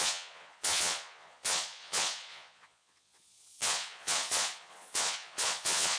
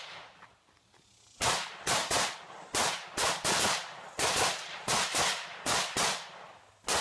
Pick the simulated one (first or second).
first